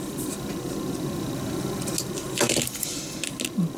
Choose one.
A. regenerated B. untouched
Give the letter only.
B